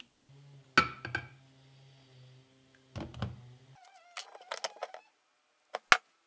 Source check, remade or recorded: recorded